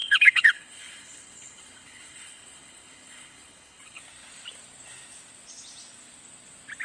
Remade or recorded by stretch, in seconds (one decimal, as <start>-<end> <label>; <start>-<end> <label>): 0.0-4.0 remade; 4.0-6.8 recorded